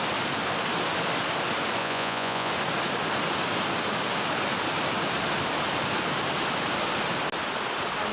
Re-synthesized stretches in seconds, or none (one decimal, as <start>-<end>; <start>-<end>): 1.8-2.5